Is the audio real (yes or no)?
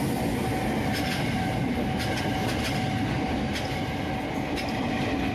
yes